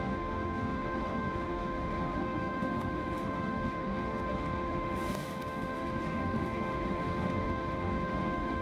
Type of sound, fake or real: fake